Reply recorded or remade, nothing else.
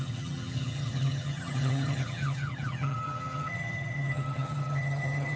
remade